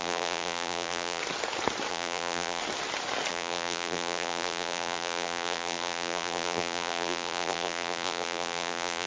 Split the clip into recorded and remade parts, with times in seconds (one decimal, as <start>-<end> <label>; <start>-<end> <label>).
0.0-1.2 remade; 1.2-1.9 recorded; 1.9-2.6 remade; 2.6-3.3 recorded; 3.3-9.1 remade